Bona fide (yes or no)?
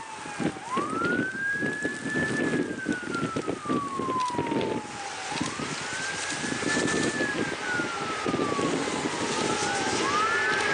yes